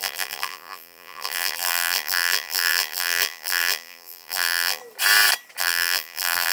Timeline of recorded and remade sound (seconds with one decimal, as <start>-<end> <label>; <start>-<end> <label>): 0.0-4.8 remade; 4.8-5.6 recorded; 5.6-6.5 remade